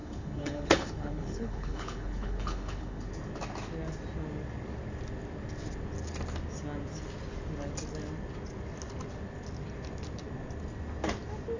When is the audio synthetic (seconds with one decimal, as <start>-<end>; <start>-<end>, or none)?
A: 0.0-3.1